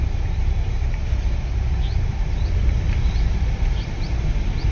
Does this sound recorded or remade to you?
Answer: remade